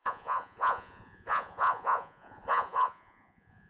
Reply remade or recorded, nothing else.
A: remade